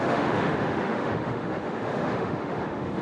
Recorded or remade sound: remade